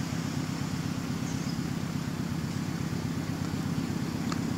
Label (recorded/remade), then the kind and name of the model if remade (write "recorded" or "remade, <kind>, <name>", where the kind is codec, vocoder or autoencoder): recorded